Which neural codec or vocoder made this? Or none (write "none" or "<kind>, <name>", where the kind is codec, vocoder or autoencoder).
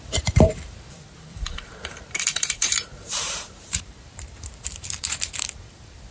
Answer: vocoder, BigVGAN v2